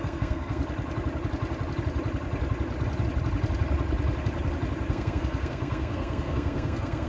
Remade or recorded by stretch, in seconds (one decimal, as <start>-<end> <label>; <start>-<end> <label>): 0.0-0.6 remade; 0.6-4.9 recorded; 4.9-7.1 remade